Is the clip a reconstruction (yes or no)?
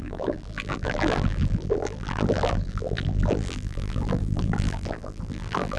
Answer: yes